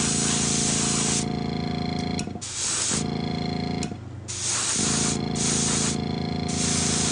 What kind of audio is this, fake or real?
real